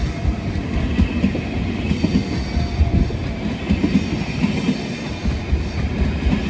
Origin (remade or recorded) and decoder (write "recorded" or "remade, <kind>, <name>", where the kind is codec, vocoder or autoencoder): recorded